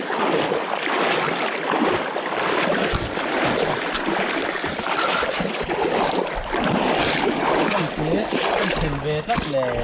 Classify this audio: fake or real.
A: real